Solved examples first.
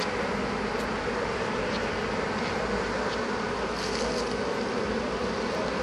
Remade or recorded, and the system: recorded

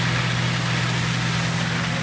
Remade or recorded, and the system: recorded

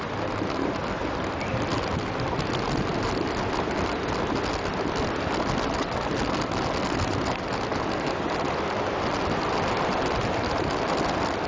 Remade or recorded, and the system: recorded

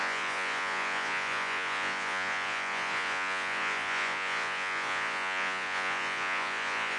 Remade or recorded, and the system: remade, vocoder, Vocos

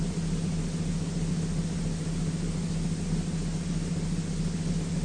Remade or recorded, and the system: recorded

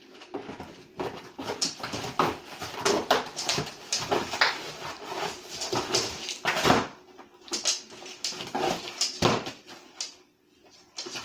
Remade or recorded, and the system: recorded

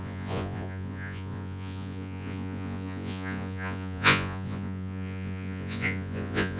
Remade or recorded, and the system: remade, vocoder, Vocos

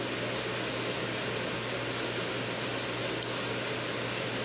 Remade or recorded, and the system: recorded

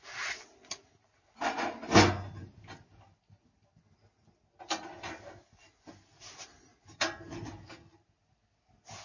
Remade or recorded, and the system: recorded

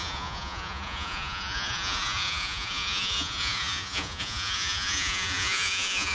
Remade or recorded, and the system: remade, vocoder, Vocos